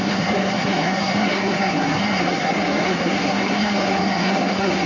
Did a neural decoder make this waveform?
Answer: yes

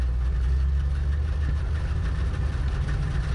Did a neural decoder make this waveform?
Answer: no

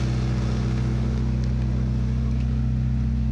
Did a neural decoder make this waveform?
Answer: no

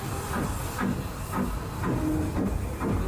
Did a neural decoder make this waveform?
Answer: no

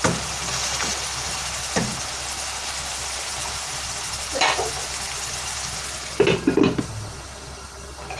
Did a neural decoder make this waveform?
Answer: no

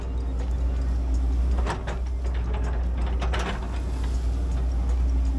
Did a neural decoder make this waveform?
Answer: no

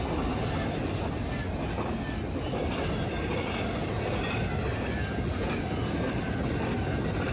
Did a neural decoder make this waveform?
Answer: no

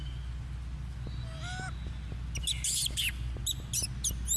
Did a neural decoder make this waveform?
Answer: no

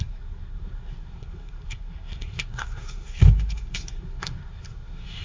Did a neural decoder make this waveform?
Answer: yes